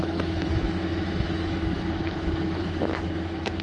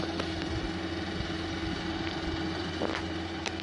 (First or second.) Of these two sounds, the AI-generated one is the first